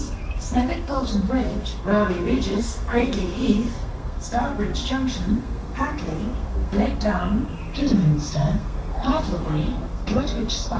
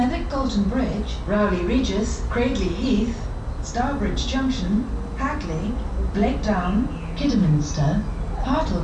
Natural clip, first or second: second